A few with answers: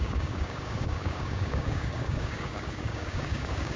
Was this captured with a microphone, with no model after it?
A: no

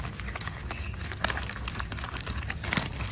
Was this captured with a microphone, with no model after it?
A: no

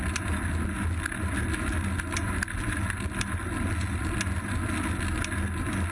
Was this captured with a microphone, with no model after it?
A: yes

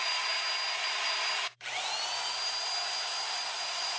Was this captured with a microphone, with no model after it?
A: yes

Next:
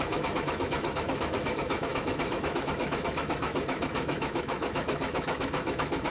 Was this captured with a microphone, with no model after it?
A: no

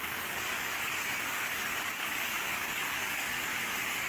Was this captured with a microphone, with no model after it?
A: no